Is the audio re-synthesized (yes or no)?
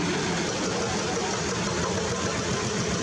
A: no